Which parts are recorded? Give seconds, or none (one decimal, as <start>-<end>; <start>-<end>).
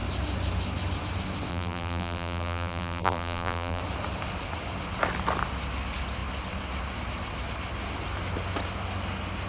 0.0-1.5; 3.8-9.5